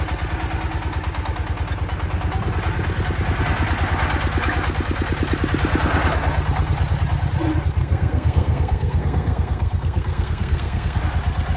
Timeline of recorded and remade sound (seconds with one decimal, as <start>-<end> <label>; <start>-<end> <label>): 0.0-7.8 recorded; 7.8-11.0 remade; 11.0-11.6 recorded